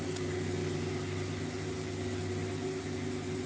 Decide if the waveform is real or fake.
real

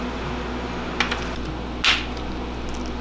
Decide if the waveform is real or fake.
real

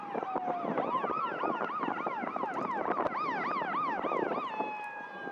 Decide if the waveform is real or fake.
real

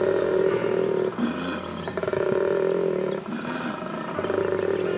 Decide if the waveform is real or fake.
real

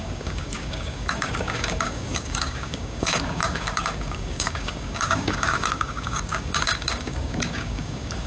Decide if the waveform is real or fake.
fake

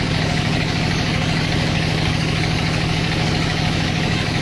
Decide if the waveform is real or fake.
fake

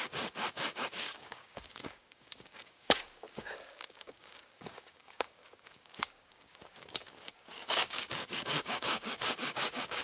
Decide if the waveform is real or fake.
fake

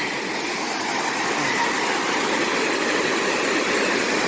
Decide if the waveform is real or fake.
real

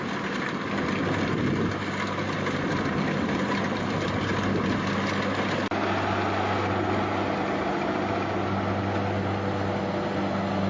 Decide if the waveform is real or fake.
real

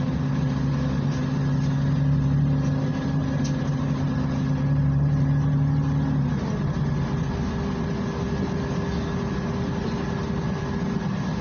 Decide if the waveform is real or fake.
real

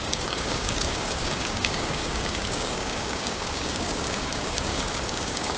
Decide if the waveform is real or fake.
fake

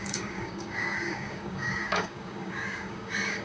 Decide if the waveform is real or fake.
fake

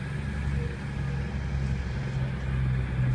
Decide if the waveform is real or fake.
real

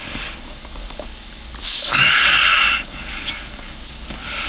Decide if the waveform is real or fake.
fake